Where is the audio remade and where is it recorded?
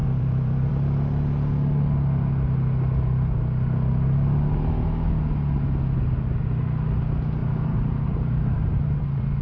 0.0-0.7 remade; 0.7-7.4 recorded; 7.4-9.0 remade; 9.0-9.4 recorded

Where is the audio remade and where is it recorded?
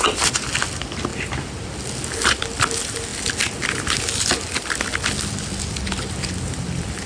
0.0-7.1 recorded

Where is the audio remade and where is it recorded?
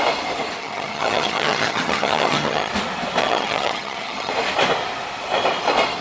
0.0-0.6 recorded; 0.6-2.7 remade; 2.7-3.2 recorded; 3.2-4.3 remade; 4.3-6.0 recorded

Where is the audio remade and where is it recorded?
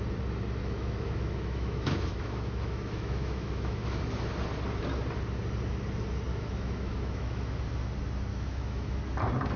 0.0-0.6 recorded; 0.6-4.0 remade; 4.0-6.3 recorded; 6.3-7.6 remade; 7.6-8.3 recorded; 8.3-9.0 remade; 9.0-9.6 recorded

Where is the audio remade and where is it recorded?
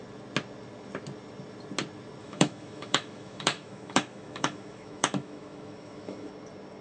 0.0-2.2 recorded; 2.2-6.3 remade; 6.3-6.8 recorded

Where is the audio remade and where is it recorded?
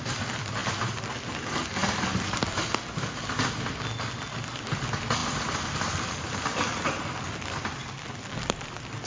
0.0-9.1 recorded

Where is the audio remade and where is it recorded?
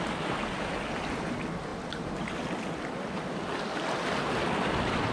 0.0-5.1 recorded